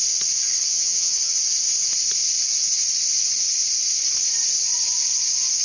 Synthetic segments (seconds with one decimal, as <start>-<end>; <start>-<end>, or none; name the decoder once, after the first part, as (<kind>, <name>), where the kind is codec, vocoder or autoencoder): 0.7-1.4 (vocoder, HiFi-GAN)